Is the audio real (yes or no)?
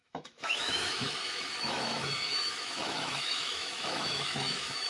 no